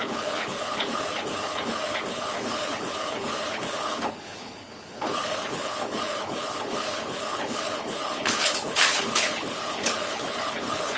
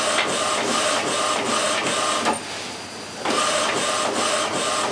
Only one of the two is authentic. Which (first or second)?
second